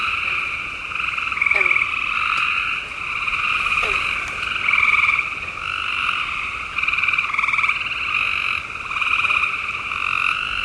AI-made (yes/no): no